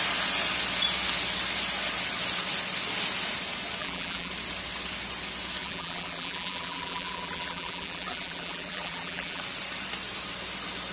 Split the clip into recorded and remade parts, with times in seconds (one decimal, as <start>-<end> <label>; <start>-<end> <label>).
0.0-3.8 recorded; 3.8-4.3 remade; 4.3-5.6 recorded; 5.6-9.4 remade; 9.4-10.9 recorded